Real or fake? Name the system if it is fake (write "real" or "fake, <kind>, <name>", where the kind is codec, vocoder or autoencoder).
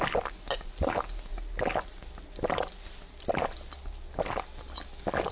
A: real